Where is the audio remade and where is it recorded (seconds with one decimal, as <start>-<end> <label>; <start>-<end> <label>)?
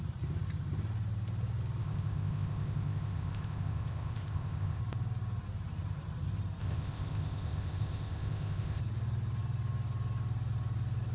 0.0-1.8 recorded; 1.8-4.8 remade; 4.8-6.6 recorded; 6.6-8.8 remade; 8.8-11.1 recorded